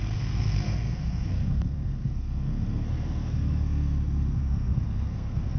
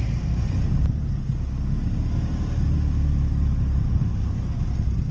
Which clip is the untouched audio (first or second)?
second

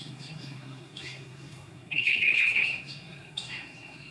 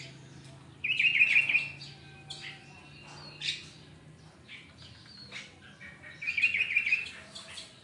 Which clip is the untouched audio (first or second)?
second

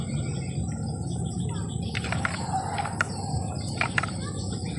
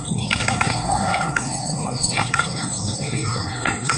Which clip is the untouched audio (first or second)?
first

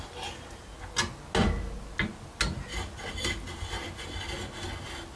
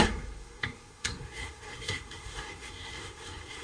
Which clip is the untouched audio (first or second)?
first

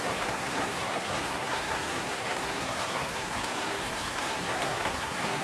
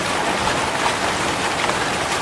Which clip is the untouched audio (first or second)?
second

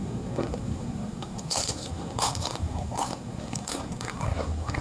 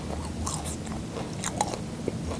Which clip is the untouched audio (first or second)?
second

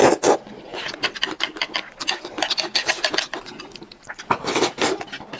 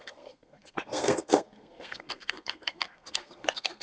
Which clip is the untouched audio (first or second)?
first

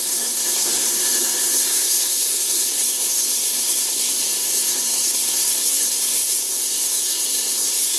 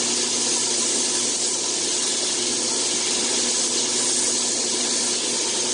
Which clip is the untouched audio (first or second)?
second